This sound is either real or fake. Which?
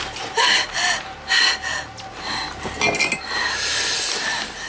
real